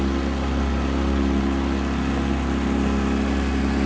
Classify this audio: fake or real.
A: real